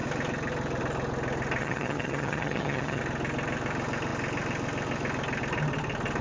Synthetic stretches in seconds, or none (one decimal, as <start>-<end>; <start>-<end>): 1.6-3.0